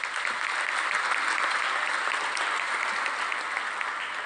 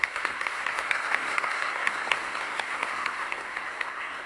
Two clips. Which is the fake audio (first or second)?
second